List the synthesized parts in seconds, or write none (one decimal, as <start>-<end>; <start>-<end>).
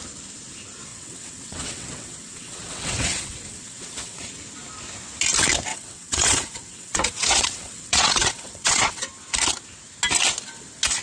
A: 0.9-4.3; 5.7-9.1